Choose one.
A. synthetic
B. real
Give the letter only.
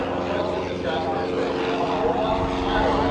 B